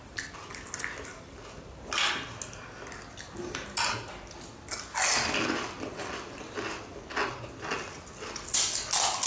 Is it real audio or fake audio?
real